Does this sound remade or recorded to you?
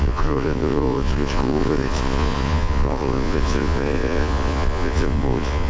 remade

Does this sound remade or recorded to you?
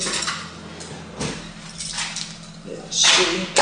recorded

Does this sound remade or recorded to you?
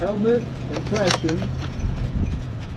remade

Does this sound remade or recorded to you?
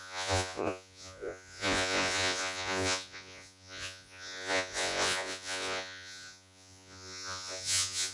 remade